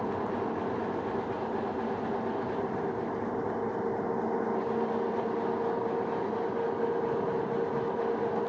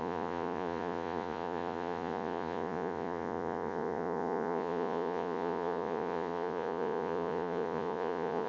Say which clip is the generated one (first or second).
second